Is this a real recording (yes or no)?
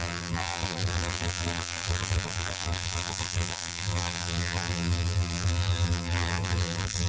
no